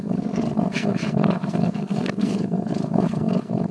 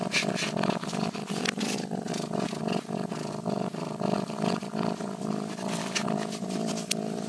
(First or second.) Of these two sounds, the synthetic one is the first